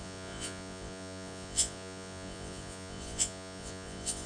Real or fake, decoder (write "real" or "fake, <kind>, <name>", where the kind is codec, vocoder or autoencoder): fake, vocoder, Vocos